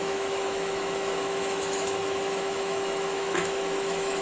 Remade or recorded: remade